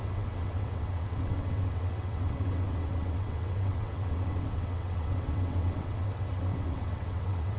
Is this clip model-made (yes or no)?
yes